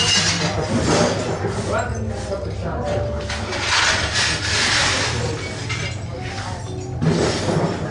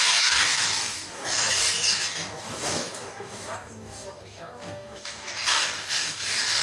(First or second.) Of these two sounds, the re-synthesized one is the second